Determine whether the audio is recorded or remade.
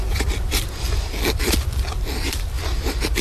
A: recorded